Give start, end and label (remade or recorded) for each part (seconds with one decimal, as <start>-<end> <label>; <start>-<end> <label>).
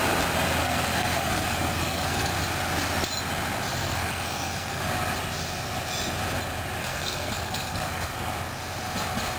0.0-0.6 recorded; 0.6-2.3 remade; 2.3-3.7 recorded; 3.7-4.8 remade; 4.8-6.8 recorded; 6.8-8.3 remade; 8.3-9.4 recorded